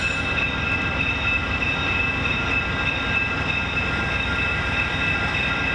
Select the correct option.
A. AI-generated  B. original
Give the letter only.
B